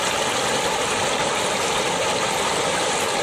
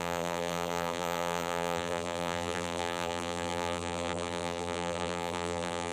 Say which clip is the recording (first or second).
first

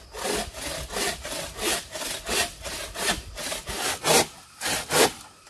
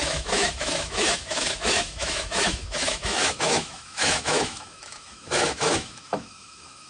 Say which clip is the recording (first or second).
first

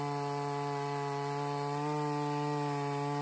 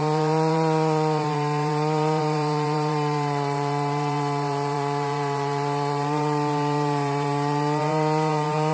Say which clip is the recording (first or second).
first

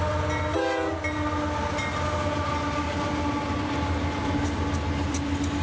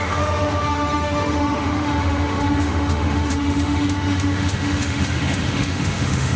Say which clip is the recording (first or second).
first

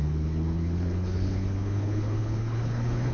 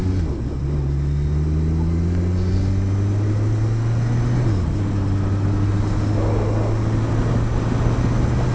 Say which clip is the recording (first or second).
second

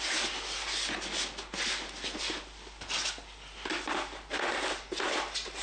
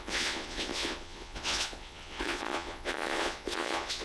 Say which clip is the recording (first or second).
first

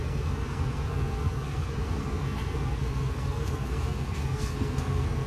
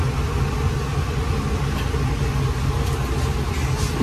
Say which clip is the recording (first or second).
second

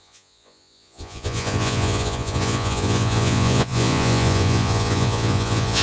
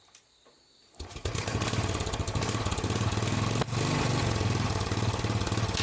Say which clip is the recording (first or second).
second